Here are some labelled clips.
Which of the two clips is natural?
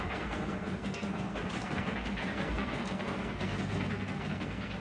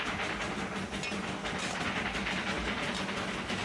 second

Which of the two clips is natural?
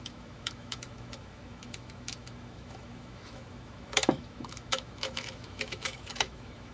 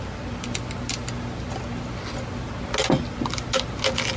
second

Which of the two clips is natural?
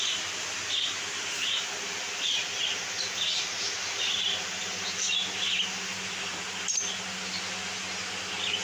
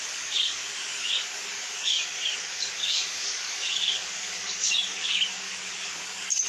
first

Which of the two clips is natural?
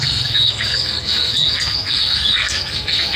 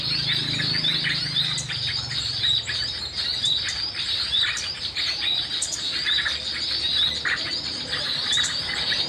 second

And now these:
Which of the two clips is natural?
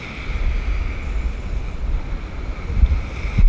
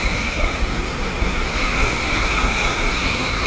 first